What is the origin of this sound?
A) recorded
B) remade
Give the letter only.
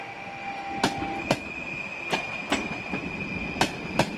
A